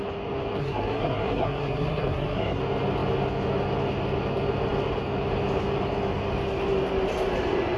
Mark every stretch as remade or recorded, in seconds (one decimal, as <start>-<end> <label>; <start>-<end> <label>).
0.0-0.6 recorded; 0.6-2.6 remade; 2.6-7.8 recorded